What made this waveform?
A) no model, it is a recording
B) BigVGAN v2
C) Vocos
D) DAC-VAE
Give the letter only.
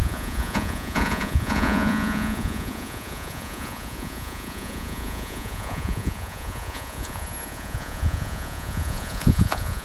C